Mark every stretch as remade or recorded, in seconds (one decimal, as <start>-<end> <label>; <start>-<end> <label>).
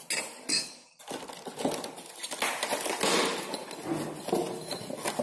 0.0-0.5 recorded; 0.5-1.0 remade; 1.0-5.2 recorded